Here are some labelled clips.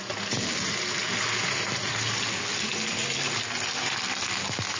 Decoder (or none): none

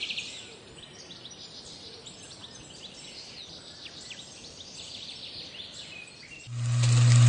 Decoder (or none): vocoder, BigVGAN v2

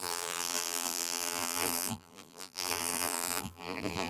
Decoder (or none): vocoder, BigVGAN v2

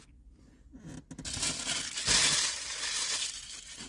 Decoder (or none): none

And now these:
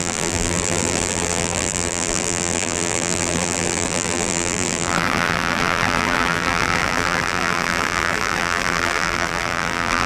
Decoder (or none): vocoder, BigVGAN v2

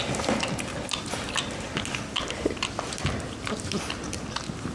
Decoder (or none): none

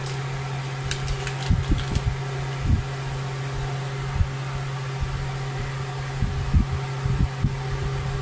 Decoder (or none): none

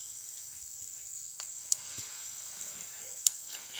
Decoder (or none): codec, SNAC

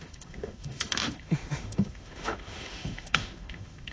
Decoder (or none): autoencoder, DAC-VAE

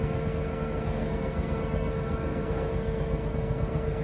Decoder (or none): codec, SNAC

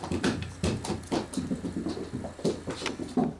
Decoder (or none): none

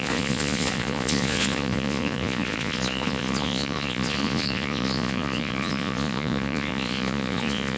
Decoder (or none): vocoder, Vocos